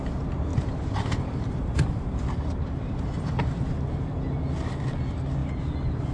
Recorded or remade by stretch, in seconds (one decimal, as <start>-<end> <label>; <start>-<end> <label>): 0.0-0.5 recorded; 0.5-3.6 remade; 3.6-6.1 recorded